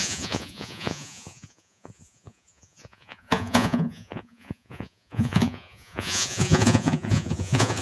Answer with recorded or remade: remade